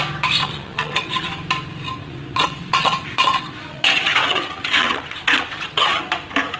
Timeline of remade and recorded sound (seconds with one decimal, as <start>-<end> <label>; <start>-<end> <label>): 0.0-0.4 recorded; 0.4-1.3 remade; 1.3-2.0 recorded; 2.0-6.0 remade; 6.0-6.6 recorded